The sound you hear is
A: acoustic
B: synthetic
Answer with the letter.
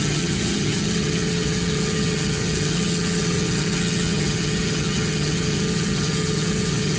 B